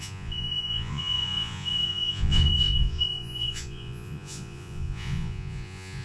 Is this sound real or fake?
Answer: fake